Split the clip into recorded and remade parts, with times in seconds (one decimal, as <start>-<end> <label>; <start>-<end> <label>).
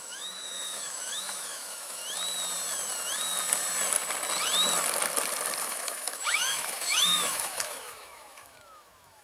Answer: 0.0-2.0 remade; 2.0-5.6 recorded; 5.6-9.2 remade